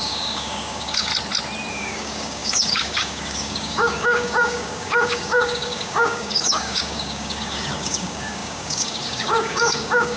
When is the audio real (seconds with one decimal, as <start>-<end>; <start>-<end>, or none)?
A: 1.1-1.7